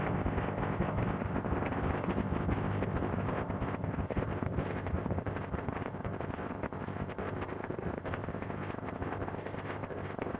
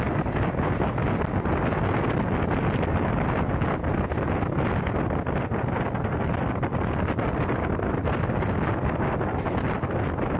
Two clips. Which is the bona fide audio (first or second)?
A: second